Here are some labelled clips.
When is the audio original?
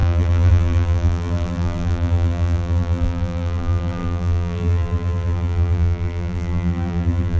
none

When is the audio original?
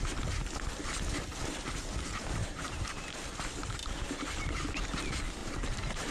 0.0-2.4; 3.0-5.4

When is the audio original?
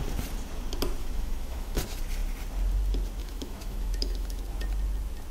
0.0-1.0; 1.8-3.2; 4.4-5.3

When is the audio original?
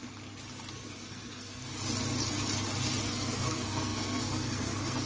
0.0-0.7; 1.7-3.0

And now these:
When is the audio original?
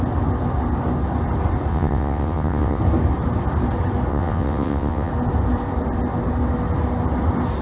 0.0-1.7; 2.8-4.1; 5.1-7.6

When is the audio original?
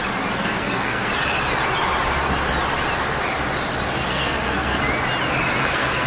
0.0-0.4; 1.1-4.1; 4.8-5.6